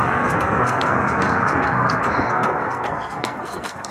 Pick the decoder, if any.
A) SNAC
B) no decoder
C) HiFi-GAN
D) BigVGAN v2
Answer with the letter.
A